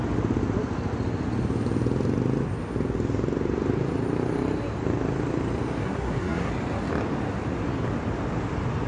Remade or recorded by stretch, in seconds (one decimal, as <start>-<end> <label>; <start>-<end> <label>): 0.0-5.8 recorded; 5.8-6.5 remade; 6.5-8.9 recorded